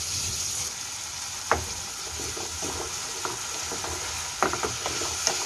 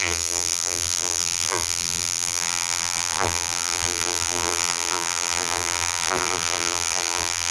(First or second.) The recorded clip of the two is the first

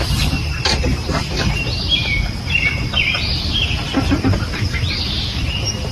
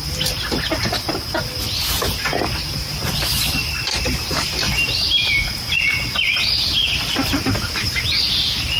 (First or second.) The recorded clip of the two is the second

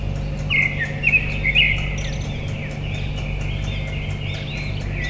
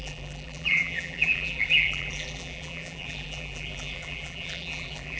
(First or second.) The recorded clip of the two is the first